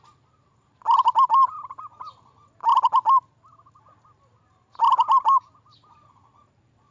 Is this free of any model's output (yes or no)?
yes